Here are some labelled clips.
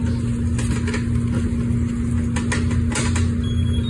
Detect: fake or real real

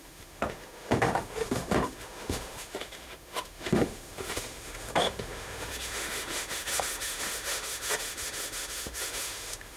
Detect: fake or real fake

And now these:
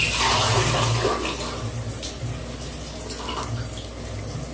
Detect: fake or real real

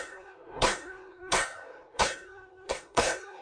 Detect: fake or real fake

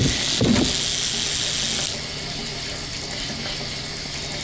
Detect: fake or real real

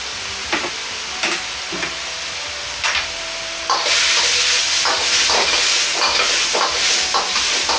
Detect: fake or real real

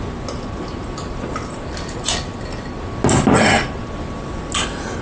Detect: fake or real real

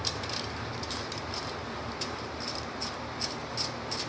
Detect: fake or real fake